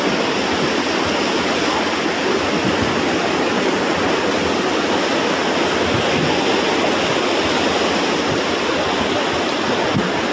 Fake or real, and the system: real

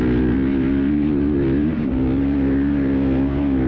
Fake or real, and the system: real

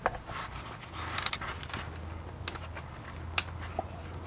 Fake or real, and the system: real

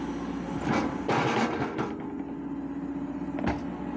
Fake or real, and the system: real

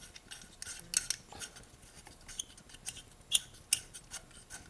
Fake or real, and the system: real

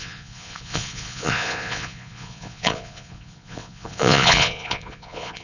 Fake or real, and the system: fake, vocoder, Vocos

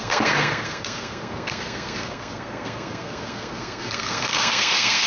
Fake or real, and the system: fake, codec, SNAC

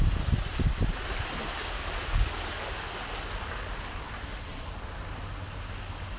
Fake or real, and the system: real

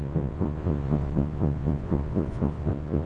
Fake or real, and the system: fake, vocoder, Vocos